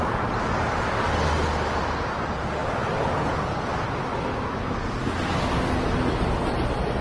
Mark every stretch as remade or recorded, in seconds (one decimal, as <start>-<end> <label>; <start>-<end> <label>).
0.0-4.1 recorded; 4.1-4.8 remade; 4.8-7.0 recorded